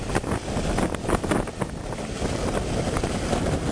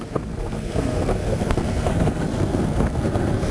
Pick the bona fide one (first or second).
first